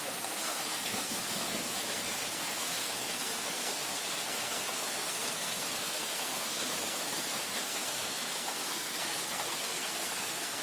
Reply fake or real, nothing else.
fake